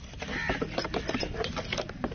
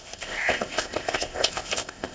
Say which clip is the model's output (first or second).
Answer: second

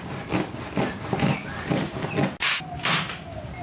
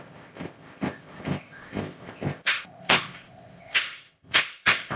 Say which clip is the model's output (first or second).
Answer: second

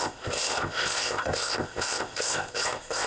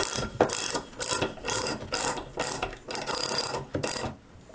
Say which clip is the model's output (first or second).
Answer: first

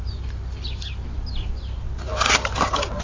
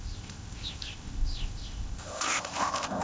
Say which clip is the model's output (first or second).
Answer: second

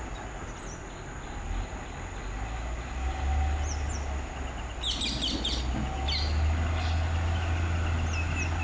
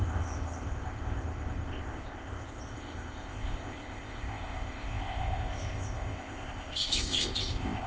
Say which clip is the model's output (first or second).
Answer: second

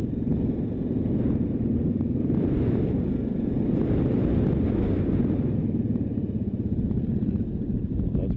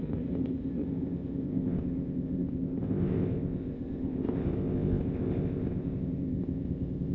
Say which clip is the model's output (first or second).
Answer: second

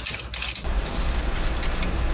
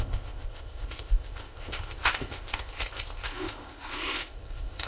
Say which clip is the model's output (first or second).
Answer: second